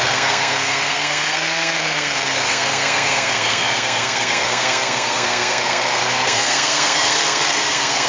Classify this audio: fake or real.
fake